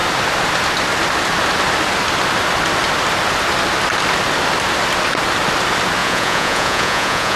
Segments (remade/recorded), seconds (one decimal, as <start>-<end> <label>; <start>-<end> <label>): 0.0-6.0 recorded; 6.0-7.4 remade